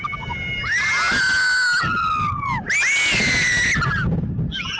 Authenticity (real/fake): real